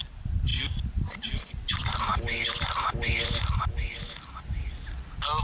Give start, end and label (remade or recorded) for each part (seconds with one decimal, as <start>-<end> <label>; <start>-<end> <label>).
0.0-5.4 recorded